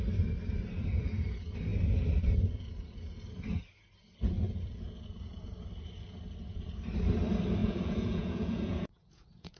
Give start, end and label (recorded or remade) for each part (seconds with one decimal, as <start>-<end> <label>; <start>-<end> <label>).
0.0-7.6 recorded; 7.6-9.6 remade